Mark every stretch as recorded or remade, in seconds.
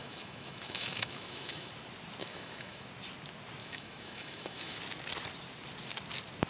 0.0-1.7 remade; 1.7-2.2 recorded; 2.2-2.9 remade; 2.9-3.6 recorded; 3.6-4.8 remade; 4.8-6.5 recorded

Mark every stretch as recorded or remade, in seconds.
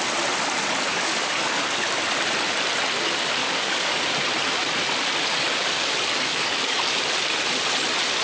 0.0-0.9 recorded; 0.9-1.6 remade; 1.6-3.4 recorded; 3.4-4.0 remade; 4.0-5.3 recorded; 5.3-6.9 remade; 6.9-8.2 recorded